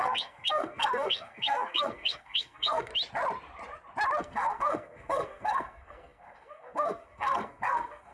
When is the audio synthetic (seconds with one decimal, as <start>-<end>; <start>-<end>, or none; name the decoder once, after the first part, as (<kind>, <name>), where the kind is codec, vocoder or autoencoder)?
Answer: 0.0-2.9 (codec, SNAC); 4.2-8.1